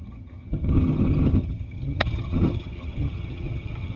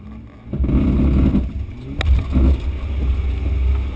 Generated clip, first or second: first